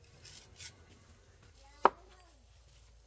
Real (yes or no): yes